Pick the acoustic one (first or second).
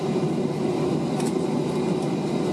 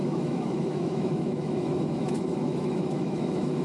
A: first